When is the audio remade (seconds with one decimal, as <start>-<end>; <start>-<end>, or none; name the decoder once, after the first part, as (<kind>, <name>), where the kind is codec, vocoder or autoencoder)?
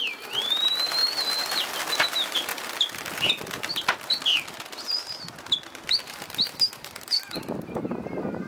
0.0-1.0 (vocoder, BigVGAN v2); 1.9-2.5; 6.1-8.5